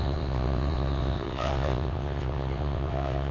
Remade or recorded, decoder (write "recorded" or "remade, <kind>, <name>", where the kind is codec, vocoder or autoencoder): remade, vocoder, WaveNeXt